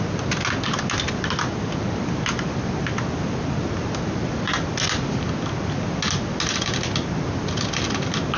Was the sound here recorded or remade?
recorded